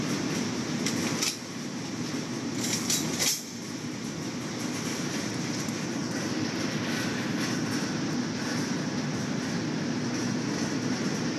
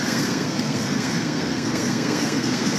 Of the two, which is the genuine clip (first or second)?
first